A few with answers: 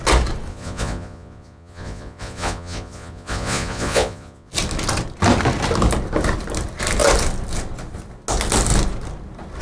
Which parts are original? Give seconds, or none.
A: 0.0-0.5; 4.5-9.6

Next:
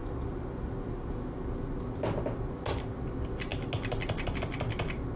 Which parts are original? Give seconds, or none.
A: 0.0-5.2

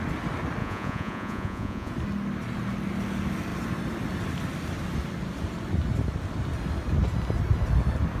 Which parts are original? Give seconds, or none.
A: 0.0-0.6; 1.9-8.2

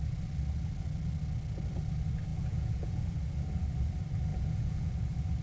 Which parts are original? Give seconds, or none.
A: 0.0-2.3; 3.1-4.3; 4.9-5.4

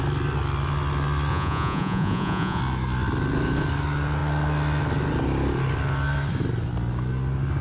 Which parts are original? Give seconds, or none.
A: 0.0-1.3; 2.6-7.6